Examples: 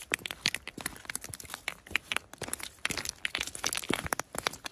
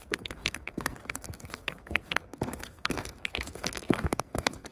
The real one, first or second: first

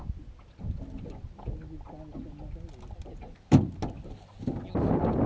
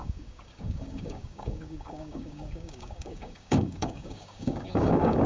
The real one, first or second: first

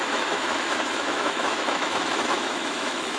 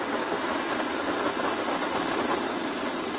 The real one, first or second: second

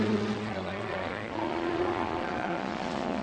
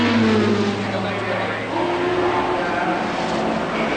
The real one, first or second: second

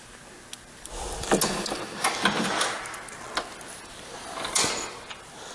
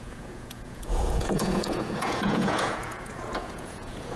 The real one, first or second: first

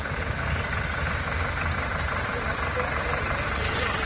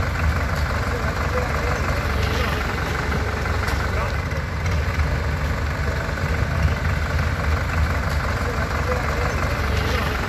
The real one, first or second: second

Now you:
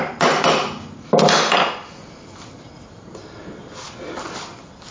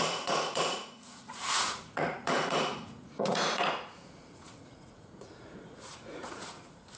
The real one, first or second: first